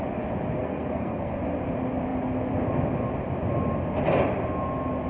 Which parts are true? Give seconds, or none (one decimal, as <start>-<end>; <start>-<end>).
0.0-0.6; 1.4-5.1